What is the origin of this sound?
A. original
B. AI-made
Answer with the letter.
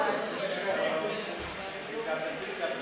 A